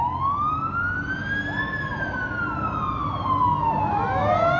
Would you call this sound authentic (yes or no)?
yes